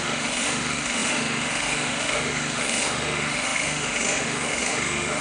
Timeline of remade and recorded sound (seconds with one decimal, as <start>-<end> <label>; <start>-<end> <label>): 0.0-5.2 remade